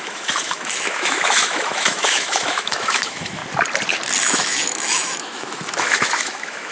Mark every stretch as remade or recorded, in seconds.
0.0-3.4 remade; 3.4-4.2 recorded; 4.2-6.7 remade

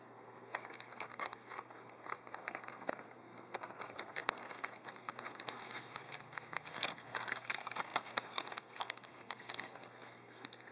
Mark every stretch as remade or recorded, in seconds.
0.0-10.7 remade

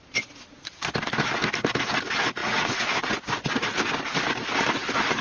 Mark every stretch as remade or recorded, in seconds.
0.0-2.4 recorded; 2.4-3.1 remade; 3.1-5.2 recorded